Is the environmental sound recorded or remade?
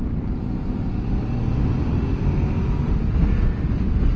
recorded